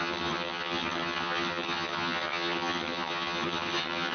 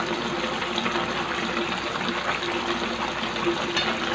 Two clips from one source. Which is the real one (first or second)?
second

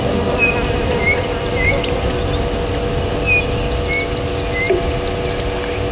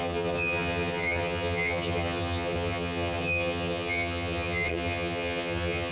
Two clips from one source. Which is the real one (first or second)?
first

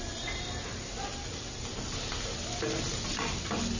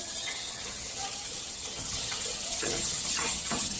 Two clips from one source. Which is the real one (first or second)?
first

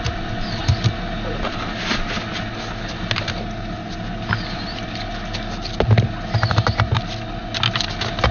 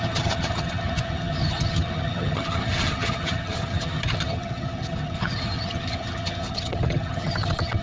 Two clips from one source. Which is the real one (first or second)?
first